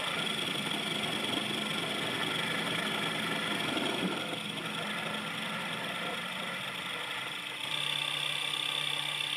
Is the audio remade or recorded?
recorded